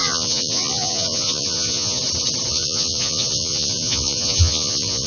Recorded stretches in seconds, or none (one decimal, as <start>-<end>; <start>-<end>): 2.0-2.5